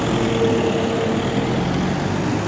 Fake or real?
real